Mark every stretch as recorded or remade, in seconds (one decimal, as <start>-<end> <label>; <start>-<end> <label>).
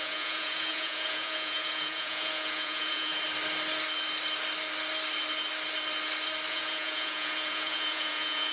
0.0-3.1 remade; 3.1-6.5 recorded; 6.5-8.5 remade